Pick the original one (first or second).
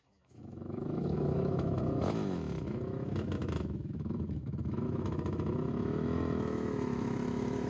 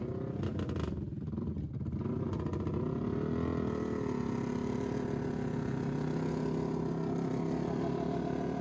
second